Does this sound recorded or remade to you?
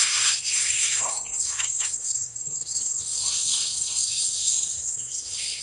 remade